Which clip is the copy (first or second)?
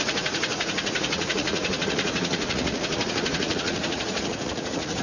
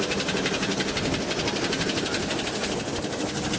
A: first